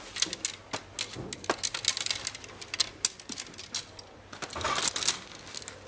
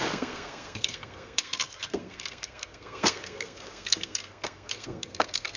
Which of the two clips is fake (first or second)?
second